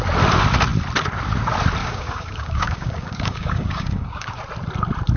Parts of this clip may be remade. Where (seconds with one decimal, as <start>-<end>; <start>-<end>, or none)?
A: 1.8-4.4